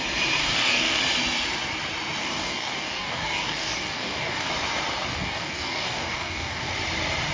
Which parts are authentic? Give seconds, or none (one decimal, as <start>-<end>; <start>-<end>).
0.0-0.4; 1.0-2.2; 4.5-5.1; 6.7-7.3